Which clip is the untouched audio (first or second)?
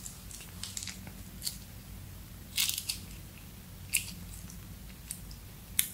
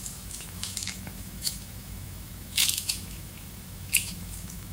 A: first